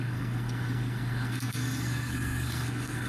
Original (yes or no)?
no